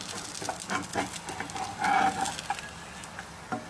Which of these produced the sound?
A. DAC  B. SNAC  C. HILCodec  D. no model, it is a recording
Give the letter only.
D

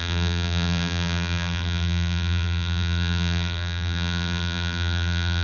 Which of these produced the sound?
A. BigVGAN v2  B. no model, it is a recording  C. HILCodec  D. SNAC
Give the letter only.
A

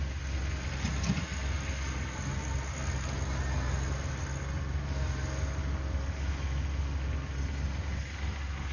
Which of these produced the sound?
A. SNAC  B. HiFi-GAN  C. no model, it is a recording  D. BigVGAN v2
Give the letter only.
C